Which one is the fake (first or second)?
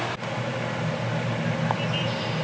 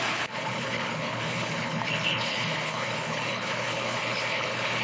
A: second